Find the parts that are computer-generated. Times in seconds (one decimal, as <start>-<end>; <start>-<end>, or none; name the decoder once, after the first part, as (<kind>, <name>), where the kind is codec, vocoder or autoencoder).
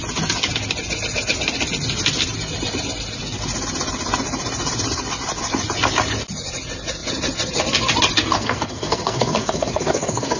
8.2-10.4 (codec, SNAC)